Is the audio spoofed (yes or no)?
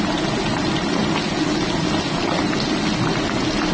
no